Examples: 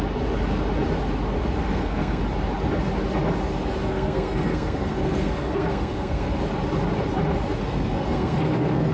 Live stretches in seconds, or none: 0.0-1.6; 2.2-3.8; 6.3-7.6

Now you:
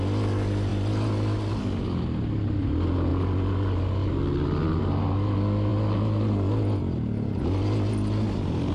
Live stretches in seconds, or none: 0.0-8.7

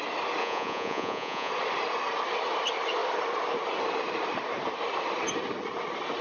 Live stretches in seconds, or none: 0.0-0.4; 1.5-6.2